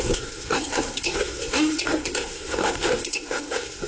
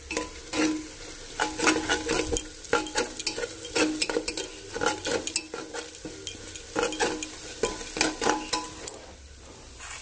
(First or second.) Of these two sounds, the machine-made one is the first